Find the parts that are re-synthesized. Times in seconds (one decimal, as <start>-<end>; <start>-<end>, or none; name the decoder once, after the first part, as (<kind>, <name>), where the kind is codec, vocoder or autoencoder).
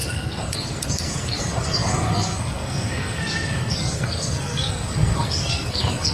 0.0-6.1 (codec, SNAC)